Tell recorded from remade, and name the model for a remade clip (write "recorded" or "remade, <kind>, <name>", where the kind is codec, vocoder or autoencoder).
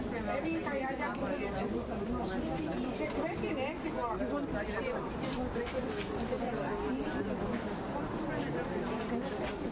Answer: recorded